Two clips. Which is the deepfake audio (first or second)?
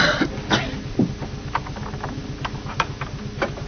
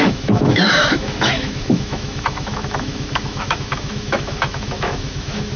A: second